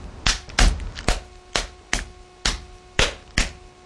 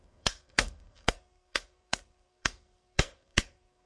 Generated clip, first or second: second